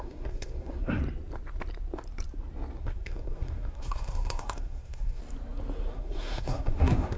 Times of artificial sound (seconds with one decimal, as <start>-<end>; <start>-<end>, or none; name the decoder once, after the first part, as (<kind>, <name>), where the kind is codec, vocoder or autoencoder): 0.0-1.0 (codec, SNAC); 2.8-5.2; 5.9-7.2